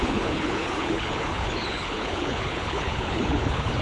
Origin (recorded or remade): remade